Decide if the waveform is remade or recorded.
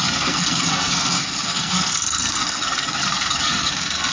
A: remade